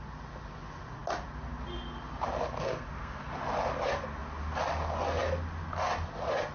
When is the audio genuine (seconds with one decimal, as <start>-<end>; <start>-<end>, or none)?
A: 0.0-2.6; 3.3-6.5